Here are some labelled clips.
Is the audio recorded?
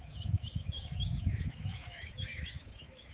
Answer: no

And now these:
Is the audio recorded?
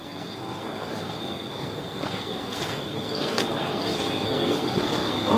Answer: no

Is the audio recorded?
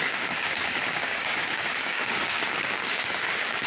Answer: no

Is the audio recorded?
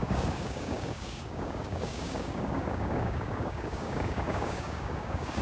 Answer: no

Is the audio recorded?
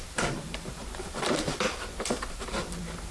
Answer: no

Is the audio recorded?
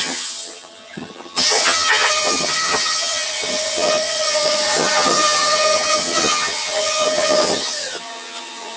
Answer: no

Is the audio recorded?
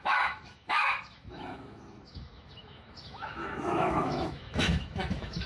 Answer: no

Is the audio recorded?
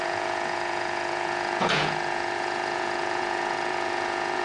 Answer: no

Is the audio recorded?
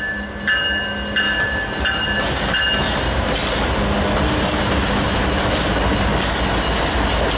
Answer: yes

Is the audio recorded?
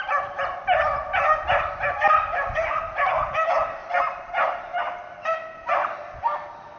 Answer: yes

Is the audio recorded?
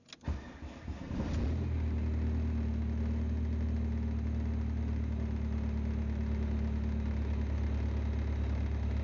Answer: yes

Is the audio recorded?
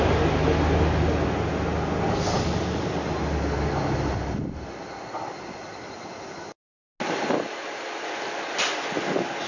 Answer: yes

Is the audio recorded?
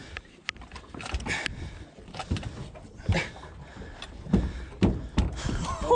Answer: yes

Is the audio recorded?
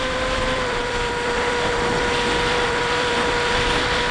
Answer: no